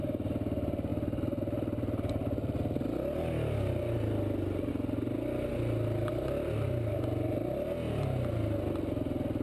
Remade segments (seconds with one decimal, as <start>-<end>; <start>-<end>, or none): none